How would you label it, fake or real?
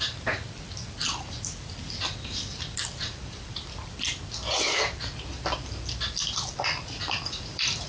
fake